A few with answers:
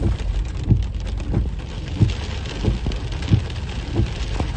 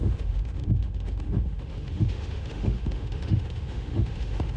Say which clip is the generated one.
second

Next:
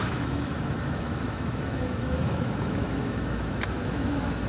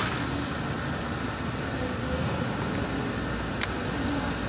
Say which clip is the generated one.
first